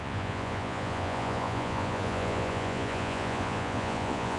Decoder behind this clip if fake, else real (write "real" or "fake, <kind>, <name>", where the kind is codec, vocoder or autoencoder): fake, vocoder, Vocos